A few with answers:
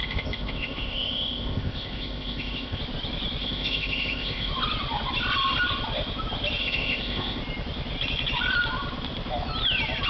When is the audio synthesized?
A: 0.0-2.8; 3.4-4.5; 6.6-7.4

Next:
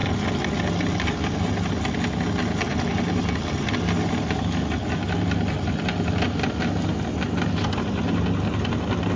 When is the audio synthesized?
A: none

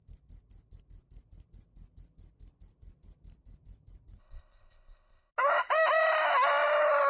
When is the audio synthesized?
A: 4.2-5.3

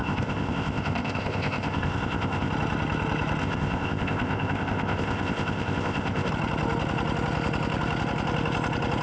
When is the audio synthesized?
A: 0.0-2.5; 3.4-6.3

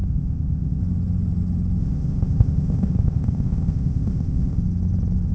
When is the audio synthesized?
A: 0.0-0.8; 1.8-4.6

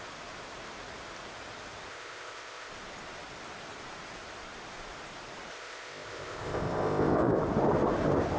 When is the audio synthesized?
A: 1.9-2.7; 5.5-7.4

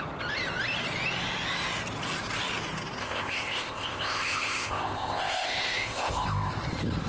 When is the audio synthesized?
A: 3.0-6.5